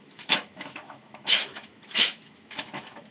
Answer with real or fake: fake